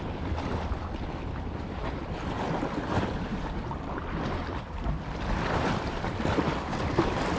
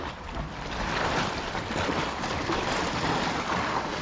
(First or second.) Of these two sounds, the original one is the second